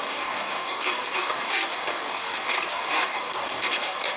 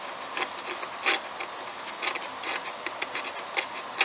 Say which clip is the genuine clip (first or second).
second